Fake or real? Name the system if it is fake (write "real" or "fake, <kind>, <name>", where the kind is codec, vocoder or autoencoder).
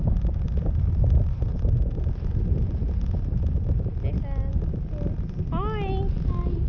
real